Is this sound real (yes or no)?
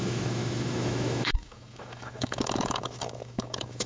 no